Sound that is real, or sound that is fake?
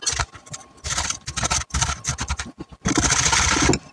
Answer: real